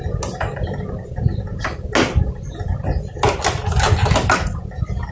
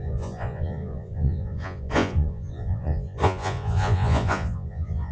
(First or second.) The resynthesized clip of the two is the second